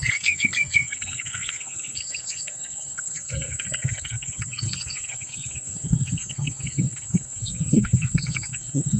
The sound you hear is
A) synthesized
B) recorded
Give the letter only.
A